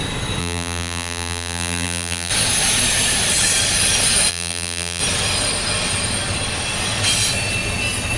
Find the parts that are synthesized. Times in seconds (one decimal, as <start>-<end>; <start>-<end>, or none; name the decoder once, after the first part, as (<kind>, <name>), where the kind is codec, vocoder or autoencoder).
0.4-2.3 (vocoder, BigVGAN v2); 4.3-5.0